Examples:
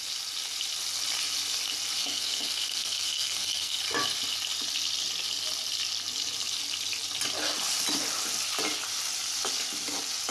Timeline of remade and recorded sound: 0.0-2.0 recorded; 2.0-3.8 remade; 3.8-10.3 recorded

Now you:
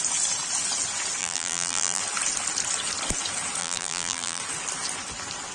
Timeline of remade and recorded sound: 0.0-1.2 recorded; 1.2-2.0 remade; 2.0-3.6 recorded; 3.6-4.4 remade; 4.4-5.5 recorded

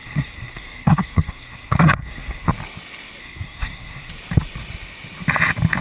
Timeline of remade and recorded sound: 0.0-2.5 remade; 2.5-3.2 recorded; 3.2-4.1 remade; 4.1-5.8 recorded